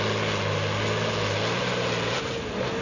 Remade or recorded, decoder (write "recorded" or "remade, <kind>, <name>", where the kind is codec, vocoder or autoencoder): recorded